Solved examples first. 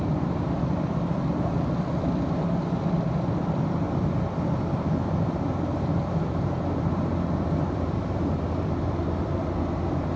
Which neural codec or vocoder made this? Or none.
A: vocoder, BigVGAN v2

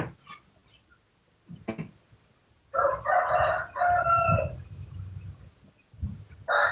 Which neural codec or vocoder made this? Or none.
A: none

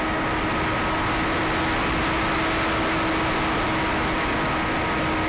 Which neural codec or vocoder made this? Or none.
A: none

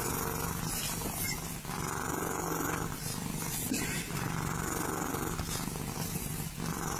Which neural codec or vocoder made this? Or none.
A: none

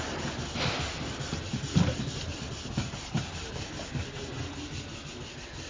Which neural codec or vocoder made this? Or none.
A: none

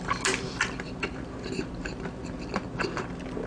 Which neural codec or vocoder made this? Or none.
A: none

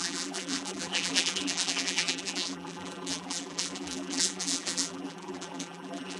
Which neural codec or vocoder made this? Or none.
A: vocoder, BigVGAN v2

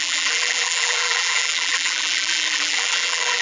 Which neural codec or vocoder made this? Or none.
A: vocoder, BigVGAN v2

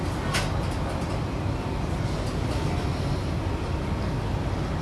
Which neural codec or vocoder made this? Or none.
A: none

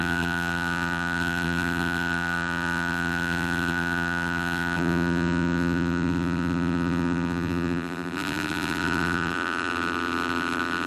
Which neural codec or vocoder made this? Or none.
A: vocoder, BigVGAN v2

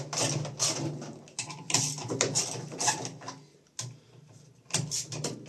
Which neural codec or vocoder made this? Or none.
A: none